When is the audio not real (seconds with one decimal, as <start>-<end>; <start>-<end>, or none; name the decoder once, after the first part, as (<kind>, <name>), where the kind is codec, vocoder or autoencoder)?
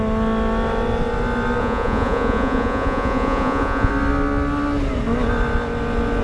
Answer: 1.6-3.9 (vocoder, Vocos)